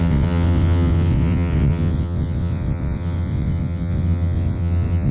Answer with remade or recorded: remade